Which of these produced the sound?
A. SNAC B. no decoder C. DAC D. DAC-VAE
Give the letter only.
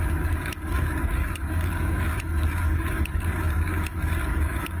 C